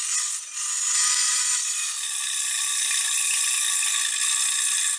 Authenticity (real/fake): real